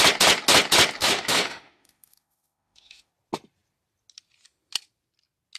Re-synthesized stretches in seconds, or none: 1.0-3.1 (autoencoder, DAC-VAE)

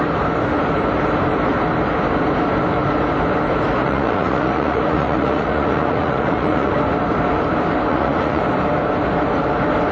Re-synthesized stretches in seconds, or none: 3.8-6.7 (vocoder, Vocos); 7.9-8.4

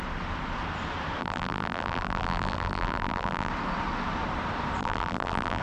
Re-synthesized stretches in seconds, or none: 1.2-3.5 (vocoder, BigVGAN v2); 4.8-5.6